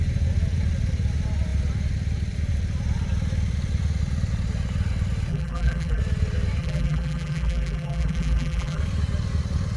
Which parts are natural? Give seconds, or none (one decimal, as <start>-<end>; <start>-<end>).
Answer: 0.0-5.3; 6.0-6.6; 8.8-9.8